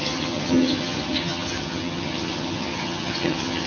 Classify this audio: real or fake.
fake